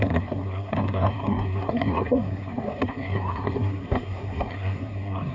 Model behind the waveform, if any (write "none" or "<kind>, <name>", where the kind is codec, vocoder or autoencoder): codec, SNAC